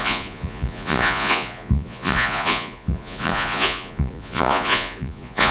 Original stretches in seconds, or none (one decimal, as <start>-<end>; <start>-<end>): none